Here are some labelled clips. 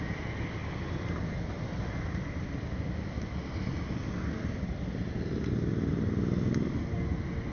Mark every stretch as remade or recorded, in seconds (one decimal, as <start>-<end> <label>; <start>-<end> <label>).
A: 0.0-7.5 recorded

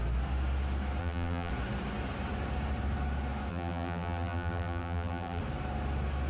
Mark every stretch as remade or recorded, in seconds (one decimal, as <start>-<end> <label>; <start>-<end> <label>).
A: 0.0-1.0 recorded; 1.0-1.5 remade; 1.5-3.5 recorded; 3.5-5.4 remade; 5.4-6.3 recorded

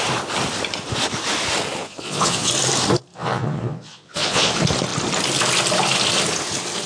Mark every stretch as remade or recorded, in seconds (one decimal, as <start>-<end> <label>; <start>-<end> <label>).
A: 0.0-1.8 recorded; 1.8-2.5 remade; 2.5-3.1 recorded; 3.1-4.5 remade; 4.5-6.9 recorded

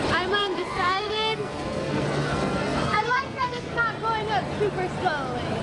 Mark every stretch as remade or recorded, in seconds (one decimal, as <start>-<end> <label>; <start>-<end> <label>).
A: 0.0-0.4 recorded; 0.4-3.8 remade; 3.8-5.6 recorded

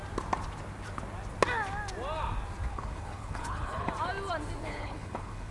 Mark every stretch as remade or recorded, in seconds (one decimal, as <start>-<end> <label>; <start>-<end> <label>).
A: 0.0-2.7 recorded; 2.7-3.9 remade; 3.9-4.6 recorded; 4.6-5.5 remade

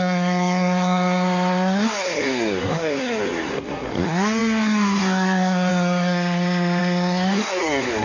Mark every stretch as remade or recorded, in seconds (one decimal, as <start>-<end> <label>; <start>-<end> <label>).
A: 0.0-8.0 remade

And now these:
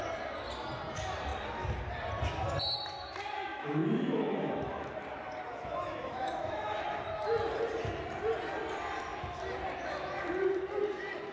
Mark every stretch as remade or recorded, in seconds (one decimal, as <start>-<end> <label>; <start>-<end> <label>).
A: 0.0-3.5 recorded; 3.5-4.9 remade; 4.9-5.5 recorded; 5.5-6.8 remade; 6.8-11.3 recorded

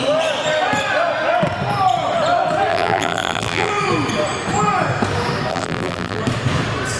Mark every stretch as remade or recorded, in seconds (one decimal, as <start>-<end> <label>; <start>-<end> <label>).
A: 0.0-2.7 recorded; 2.7-3.7 remade; 3.7-5.5 recorded; 5.5-6.2 remade; 6.2-7.0 recorded